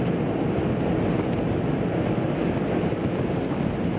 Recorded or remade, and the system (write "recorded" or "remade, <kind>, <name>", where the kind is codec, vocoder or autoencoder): recorded